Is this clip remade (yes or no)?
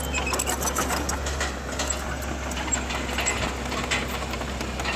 no